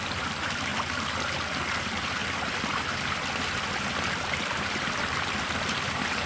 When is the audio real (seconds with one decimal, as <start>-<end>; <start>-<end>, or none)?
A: 0.7-1.8